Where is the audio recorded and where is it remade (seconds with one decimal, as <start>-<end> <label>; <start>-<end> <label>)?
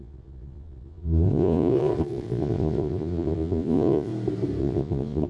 0.0-4.1 remade; 4.1-4.6 recorded; 4.6-5.3 remade